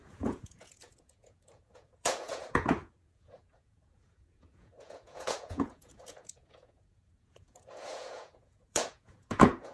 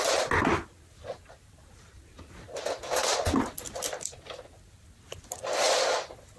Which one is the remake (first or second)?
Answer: first